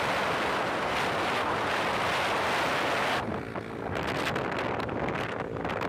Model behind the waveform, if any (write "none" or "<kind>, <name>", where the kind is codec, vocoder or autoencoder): none